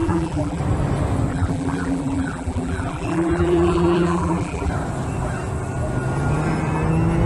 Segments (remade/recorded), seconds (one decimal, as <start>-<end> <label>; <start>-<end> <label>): 0.0-0.6 remade; 0.6-1.3 recorded; 1.3-4.7 remade; 4.7-7.3 recorded